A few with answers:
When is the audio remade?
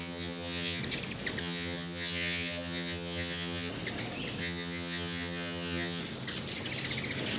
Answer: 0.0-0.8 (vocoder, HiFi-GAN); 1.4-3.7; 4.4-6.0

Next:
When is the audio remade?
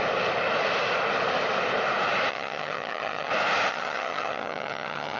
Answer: 2.3-3.3 (vocoder, HiFi-GAN); 3.7-5.2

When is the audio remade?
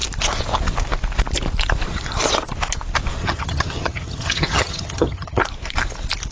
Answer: 3.2-5.4 (vocoder, HiFi-GAN)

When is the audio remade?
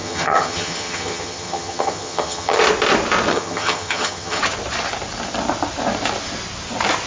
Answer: 0.0-2.6 (vocoder, HiFi-GAN); 3.3-4.4